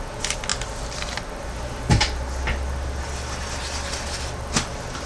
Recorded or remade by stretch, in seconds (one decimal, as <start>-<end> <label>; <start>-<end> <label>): 0.0-5.1 recorded